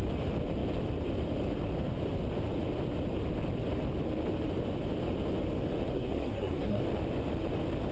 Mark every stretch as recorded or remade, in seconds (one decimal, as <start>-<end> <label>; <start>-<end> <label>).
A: 0.0-5.9 recorded; 5.9-6.8 remade; 6.8-7.9 recorded